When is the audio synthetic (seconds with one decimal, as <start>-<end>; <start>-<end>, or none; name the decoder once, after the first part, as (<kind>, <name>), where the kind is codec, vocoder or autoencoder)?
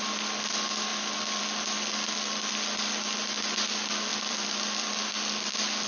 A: 4.1-5.1 (vocoder, BigVGAN v2)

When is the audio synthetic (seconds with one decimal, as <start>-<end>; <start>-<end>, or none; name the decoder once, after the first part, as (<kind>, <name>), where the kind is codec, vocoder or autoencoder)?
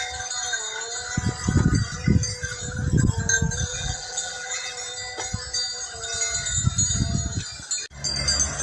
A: 3.7-4.7 (vocoder, BigVGAN v2)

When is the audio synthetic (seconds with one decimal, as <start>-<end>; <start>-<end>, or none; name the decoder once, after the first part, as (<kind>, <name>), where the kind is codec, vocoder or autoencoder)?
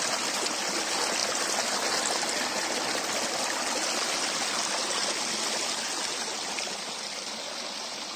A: none